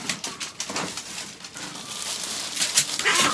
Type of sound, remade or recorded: recorded